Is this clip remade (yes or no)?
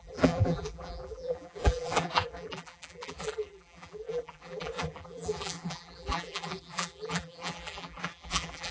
yes